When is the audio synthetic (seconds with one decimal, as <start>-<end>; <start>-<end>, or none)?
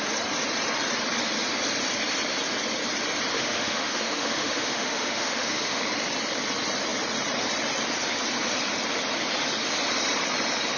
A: 3.3-5.8